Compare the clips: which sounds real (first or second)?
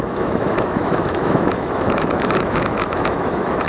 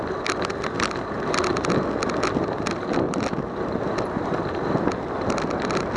second